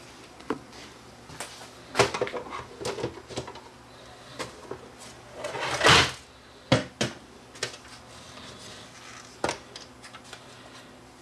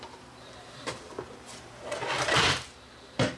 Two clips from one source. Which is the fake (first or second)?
second